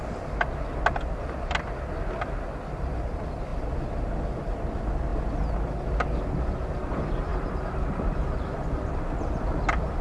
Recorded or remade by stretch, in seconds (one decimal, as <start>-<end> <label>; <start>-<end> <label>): 0.0-7.3 recorded; 7.3-8.9 remade; 8.9-10.0 recorded